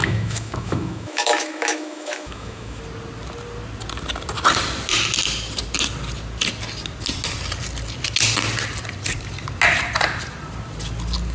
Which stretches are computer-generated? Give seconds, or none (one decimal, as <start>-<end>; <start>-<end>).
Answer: 0.0-2.8